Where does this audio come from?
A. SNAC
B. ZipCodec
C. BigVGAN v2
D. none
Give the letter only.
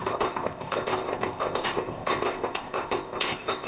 B